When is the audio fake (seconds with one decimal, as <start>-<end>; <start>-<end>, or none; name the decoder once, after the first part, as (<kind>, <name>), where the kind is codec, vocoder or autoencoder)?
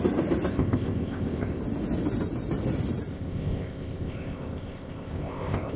0.5-1.6 (codec, ZipCodec); 3.1-5.8